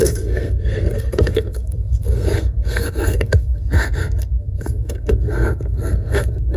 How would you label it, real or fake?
fake